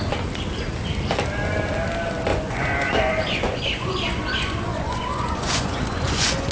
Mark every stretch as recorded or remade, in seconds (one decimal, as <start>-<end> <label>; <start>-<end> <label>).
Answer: 0.0-2.3 recorded; 2.3-6.5 remade